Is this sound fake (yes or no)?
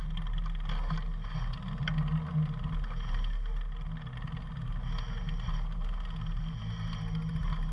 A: no